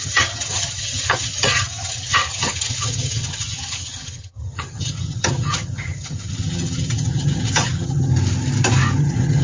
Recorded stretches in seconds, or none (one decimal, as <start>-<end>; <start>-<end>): 8.1-9.0